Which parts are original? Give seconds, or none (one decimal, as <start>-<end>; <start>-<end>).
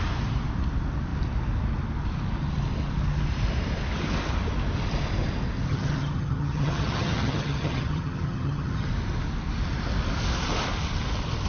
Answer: 0.0-5.7; 8.9-11.5